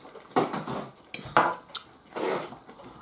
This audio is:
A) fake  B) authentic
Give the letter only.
B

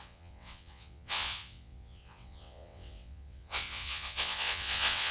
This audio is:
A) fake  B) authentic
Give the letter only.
A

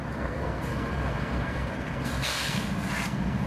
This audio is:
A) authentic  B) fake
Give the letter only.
B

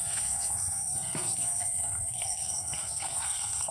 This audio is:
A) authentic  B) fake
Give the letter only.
B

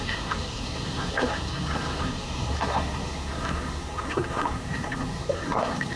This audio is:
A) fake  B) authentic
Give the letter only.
A